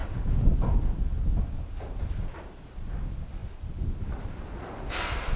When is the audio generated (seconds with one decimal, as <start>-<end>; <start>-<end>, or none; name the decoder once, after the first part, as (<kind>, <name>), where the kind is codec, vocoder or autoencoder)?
3.4-5.4 (vocoder, BigVGAN v2)